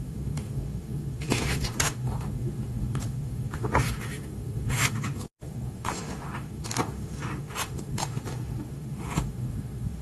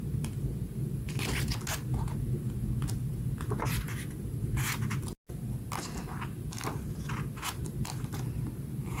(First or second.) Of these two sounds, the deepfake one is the first